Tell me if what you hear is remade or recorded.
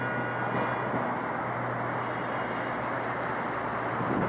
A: recorded